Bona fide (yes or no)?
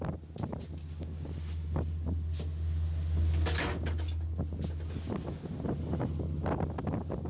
yes